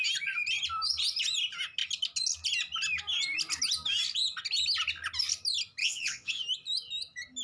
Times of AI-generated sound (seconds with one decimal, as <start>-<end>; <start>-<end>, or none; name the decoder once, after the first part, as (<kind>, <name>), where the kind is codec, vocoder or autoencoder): 5.8-6.4 (vocoder, WaveNeXt)